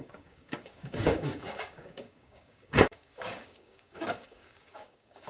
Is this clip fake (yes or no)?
yes